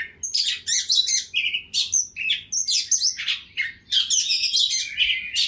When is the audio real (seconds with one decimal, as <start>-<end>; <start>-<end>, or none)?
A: 0.0-5.5